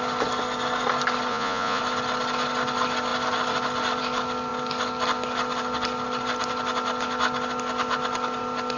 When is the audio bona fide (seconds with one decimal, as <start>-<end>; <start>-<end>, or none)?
0.0-1.3; 1.8-8.8